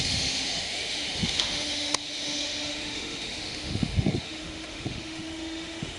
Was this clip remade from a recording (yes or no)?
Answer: yes